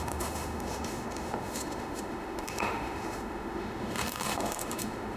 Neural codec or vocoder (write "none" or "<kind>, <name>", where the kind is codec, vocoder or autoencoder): autoencoder, DAC-VAE